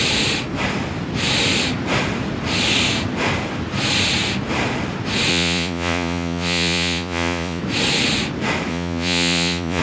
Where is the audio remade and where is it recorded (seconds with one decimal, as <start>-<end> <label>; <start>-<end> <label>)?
0.0-5.3 recorded; 5.3-7.6 remade; 7.6-8.7 recorded; 8.7-9.8 remade